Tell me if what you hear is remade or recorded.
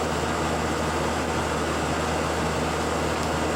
recorded